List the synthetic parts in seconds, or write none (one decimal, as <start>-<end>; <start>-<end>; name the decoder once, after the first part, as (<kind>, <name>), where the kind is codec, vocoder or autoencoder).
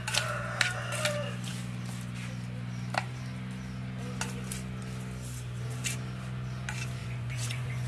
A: 7.0-7.9 (vocoder, Vocos)